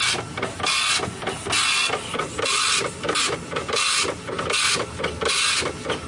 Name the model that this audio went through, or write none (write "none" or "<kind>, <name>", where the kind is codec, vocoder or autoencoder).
none